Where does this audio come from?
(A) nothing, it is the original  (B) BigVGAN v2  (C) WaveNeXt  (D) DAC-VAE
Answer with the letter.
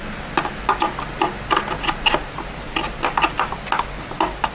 A